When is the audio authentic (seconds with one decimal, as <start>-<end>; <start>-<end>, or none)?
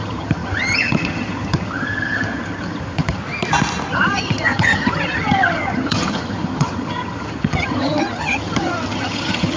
3.2-3.9